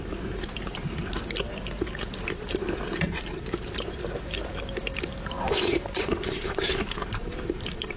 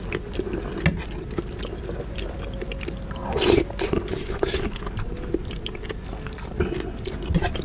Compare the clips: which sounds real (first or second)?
second